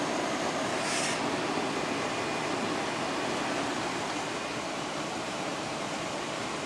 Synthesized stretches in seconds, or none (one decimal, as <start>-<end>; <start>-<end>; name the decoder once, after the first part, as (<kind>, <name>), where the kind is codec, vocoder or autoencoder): 0.0-0.7 (vocoder, BigVGAN v2); 4.7-6.7